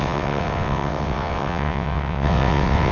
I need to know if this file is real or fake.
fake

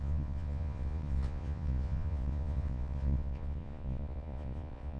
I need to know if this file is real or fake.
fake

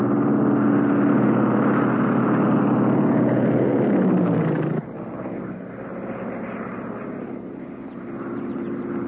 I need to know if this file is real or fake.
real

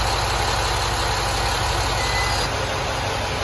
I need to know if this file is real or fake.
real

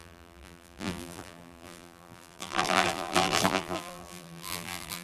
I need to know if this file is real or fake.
fake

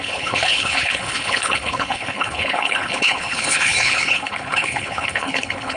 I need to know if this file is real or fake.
fake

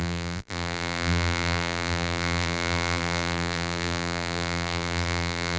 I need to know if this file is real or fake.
fake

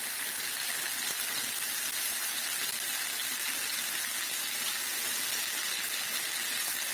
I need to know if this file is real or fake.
real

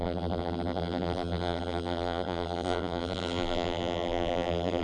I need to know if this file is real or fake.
fake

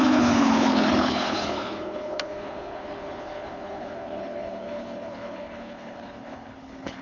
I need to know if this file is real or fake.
fake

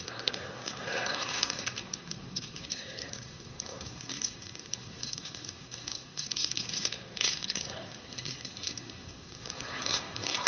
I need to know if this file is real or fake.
fake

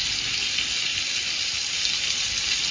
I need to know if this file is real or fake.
real